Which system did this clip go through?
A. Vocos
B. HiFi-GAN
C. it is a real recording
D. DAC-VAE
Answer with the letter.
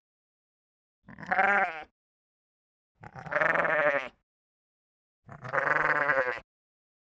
C